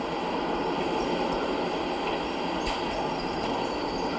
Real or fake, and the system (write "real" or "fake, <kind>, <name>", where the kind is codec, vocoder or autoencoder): real